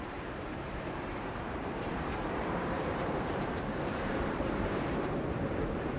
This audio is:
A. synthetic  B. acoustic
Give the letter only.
A